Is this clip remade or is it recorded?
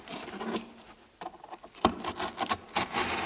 recorded